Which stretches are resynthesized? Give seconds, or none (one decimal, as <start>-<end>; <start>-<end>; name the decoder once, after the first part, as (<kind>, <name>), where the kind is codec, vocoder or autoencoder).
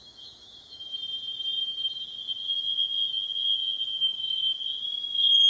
0.0-0.9 (autoencoder, DAC-VAE); 4.0-4.5